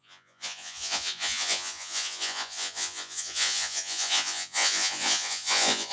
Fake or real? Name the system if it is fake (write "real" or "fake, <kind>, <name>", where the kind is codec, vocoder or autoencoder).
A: fake, vocoder, Vocos